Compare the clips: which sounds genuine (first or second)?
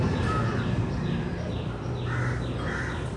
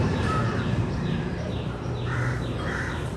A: first